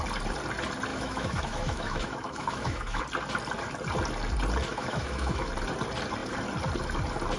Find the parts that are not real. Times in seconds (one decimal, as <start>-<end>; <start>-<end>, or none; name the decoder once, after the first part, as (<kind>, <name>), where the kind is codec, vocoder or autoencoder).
0.9-3.0 (autoencoder, DAC-VAE); 4.7-5.5